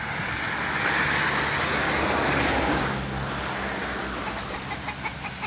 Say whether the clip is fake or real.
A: real